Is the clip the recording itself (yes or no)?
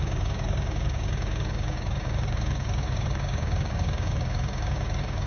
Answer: no